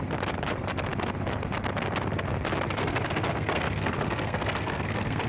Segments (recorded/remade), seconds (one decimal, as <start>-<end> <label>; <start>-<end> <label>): 0.0-2.8 recorded; 2.8-5.3 remade